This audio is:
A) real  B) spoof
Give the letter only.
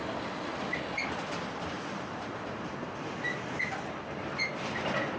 A